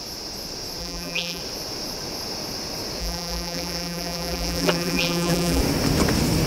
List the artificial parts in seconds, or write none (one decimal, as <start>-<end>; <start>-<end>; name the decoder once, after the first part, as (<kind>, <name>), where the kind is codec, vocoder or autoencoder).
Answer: 0.8-1.4 (vocoder, BigVGAN v2); 3.0-5.6